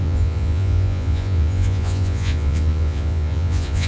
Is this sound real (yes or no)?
no